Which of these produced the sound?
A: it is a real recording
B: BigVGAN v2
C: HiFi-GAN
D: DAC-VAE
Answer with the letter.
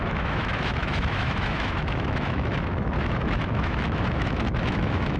D